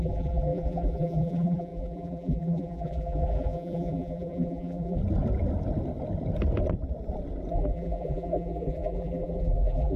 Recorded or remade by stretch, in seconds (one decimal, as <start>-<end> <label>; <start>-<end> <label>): 0.0-5.0 remade; 5.0-7.5 recorded; 7.5-10.0 remade

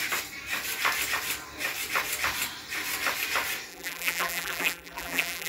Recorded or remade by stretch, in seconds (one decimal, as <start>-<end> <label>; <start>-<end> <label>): 0.0-3.7 recorded; 3.7-5.5 remade